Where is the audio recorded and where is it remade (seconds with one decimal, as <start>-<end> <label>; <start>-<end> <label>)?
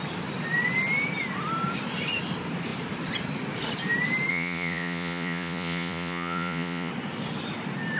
0.0-4.3 recorded; 4.3-6.9 remade; 6.9-8.0 recorded